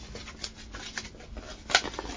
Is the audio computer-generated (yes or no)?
no